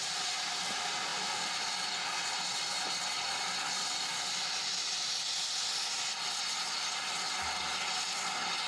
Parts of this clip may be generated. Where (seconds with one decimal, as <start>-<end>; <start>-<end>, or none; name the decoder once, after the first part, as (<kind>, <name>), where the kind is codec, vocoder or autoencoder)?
none